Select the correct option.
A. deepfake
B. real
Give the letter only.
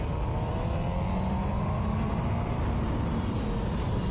B